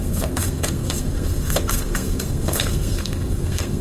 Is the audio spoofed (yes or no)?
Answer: yes